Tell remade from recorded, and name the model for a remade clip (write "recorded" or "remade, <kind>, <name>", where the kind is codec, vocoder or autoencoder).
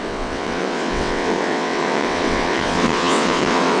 remade, vocoder, WaveNeXt